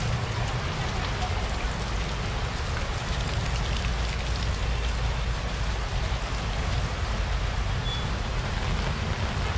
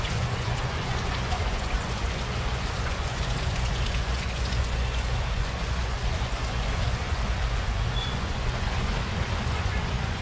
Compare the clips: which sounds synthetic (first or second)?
second